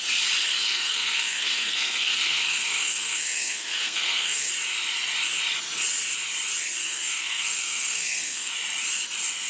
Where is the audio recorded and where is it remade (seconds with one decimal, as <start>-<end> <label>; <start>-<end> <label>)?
0.0-0.6 recorded; 0.6-4.5 remade; 4.5-6.8 recorded; 6.8-8.5 remade; 8.5-9.5 recorded